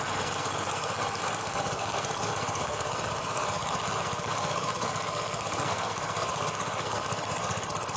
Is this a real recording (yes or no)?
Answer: no